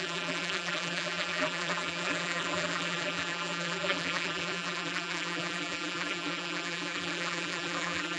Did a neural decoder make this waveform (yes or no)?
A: yes